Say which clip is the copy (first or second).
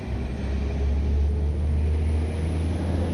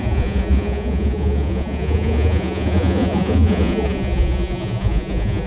second